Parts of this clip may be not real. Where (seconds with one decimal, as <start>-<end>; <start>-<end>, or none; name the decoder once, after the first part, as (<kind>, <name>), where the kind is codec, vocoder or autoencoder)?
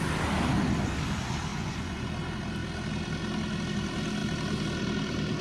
1.5-2.0 (vocoder, Vocos)